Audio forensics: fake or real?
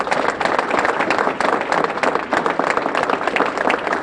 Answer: real